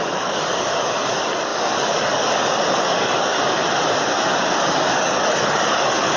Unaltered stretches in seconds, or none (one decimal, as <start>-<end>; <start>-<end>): 3.6-4.5